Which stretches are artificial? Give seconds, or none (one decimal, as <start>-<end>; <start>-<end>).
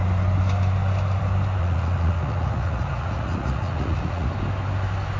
1.6-4.3